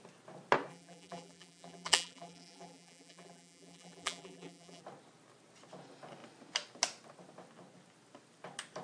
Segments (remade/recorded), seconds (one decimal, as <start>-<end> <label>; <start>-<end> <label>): 0.0-0.7 recorded; 0.7-4.8 remade; 4.8-8.8 recorded